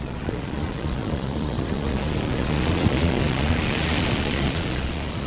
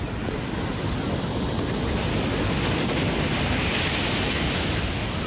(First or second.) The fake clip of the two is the first